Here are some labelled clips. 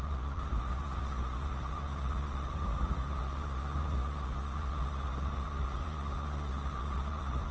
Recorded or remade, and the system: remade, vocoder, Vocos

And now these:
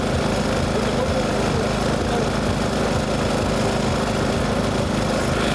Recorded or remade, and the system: recorded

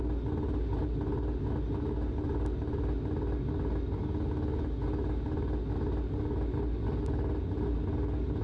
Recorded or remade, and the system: recorded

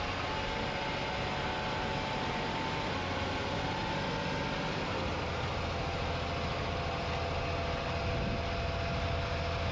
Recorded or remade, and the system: recorded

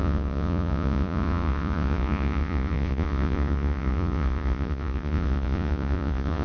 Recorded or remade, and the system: remade, vocoder, Vocos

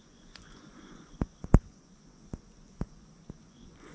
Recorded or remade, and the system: remade, vocoder, Vocos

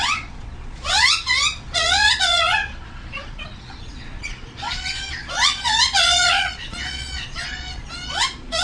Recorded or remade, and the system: remade, vocoder, Vocos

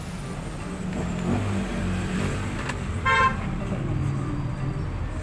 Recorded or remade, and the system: recorded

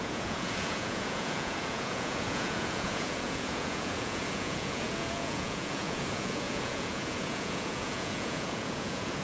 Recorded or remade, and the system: remade, vocoder, Vocos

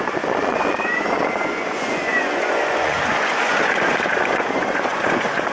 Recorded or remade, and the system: remade, vocoder, Vocos